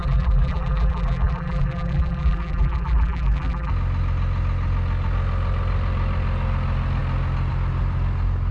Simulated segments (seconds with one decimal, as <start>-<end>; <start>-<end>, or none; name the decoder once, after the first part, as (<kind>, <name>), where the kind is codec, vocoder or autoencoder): 0.0-3.7 (vocoder, BigVGAN v2)

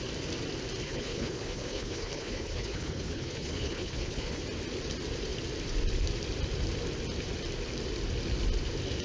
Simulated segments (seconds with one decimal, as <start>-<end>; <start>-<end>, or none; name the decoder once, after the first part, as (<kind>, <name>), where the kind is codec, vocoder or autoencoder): 0.8-4.4 (codec, HILCodec)

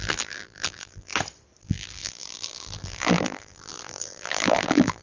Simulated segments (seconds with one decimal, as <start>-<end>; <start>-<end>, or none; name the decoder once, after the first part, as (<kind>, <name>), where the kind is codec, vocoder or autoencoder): 0.0-1.1 (vocoder, BigVGAN v2); 1.6-5.0

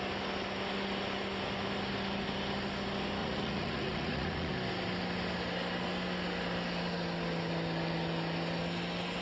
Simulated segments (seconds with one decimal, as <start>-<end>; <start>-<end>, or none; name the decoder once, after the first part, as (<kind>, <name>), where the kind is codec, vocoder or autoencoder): 3.2-4.5 (vocoder, Vocos)

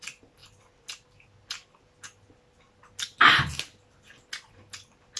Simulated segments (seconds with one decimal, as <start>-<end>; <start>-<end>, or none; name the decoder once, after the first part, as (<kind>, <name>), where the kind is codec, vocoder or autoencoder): none

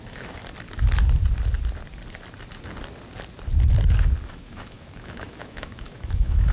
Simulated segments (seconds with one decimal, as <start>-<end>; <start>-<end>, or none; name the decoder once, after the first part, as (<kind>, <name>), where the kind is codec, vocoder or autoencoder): 0.0-0.4 (autoencoder, DAC-VAE); 4.3-6.5

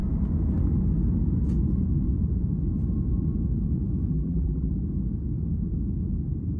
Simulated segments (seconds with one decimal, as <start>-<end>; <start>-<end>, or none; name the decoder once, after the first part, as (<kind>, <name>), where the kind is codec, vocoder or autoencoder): 4.1-4.7 (vocoder, BigVGAN v2)